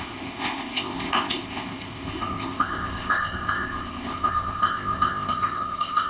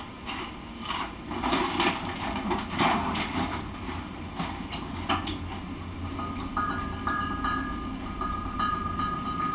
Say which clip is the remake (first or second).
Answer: first